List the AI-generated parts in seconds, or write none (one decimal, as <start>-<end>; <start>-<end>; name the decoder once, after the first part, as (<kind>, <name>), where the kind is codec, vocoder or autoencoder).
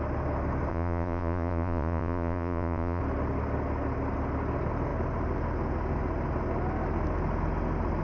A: 0.7-3.0 (vocoder, Vocos)